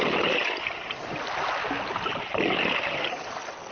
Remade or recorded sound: recorded